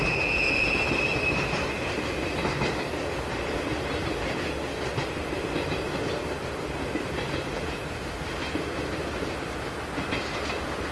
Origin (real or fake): real